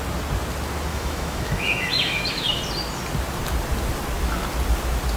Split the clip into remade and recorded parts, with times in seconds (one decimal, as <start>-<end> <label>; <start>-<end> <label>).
0.0-0.9 recorded; 0.9-2.6 remade; 2.6-5.2 recorded